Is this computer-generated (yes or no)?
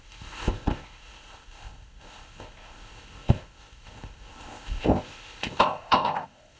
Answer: yes